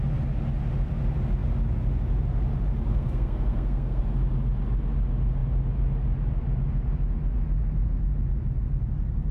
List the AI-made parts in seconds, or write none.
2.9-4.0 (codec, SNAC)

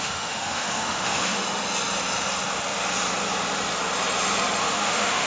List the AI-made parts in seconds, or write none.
0.0-1.4 (autoencoder, DAC-VAE); 4.6-5.3

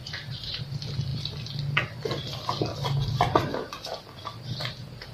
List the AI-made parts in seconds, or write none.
0.0-0.6 (vocoder, BigVGAN v2)

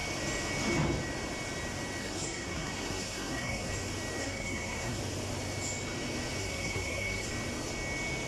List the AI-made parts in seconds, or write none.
2.0-3.7 (codec, SNAC); 4.2-5.0; 6.4-7.3